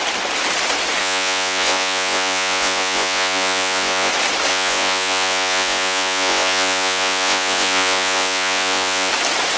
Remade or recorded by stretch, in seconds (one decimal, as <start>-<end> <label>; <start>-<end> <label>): 0.0-1.0 recorded; 1.0-4.1 remade; 4.1-4.5 recorded; 4.5-9.1 remade; 9.1-9.6 recorded